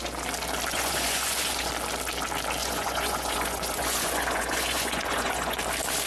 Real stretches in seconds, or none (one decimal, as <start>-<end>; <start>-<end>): 0.0-0.7; 1.7-2.6; 5.6-6.1